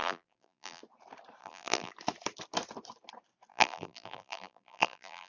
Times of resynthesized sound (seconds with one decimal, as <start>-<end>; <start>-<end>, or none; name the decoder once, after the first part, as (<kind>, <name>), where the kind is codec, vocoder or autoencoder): 0.0-0.8 (vocoder, BigVGAN v2); 1.4-1.9; 3.5-5.3